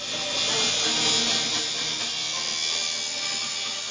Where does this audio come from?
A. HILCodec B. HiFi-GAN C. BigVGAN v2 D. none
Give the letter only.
D